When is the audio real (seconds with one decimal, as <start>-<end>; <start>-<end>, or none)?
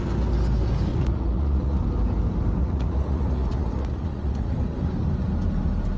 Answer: 0.0-0.9; 1.8-2.6; 4.5-6.0